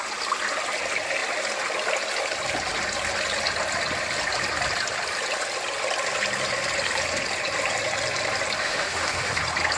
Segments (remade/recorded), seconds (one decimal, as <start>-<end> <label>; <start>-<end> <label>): 0.0-8.6 recorded; 8.6-9.4 remade; 9.4-9.8 recorded